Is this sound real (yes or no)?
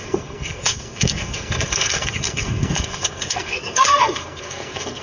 no